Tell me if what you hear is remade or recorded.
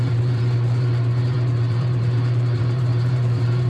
remade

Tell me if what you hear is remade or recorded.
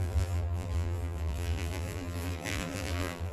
remade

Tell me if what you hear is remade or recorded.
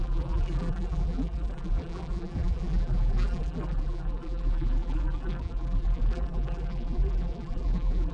remade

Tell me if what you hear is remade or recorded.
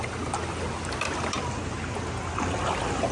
recorded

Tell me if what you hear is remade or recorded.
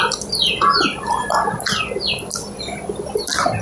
recorded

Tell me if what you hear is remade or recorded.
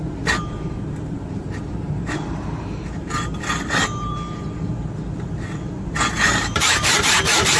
remade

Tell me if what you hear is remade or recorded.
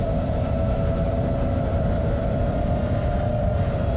remade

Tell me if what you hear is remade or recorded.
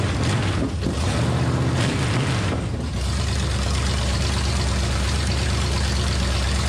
recorded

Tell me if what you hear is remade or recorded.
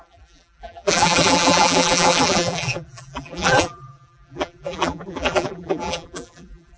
remade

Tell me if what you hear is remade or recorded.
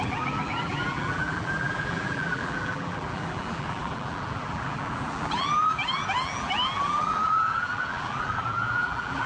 remade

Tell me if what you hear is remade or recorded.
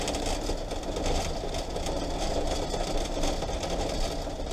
remade